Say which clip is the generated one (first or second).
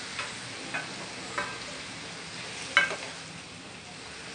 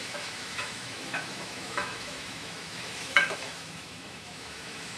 second